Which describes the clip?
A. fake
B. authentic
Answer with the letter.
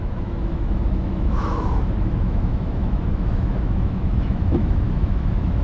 A